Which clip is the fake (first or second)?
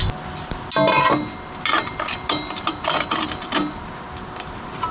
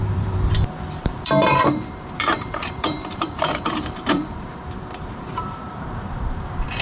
second